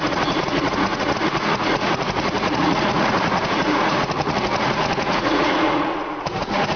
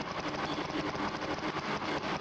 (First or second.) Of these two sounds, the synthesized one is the first